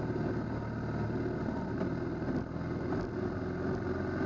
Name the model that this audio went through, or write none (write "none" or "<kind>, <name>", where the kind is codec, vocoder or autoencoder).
none